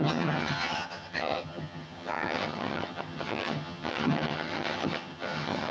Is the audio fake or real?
fake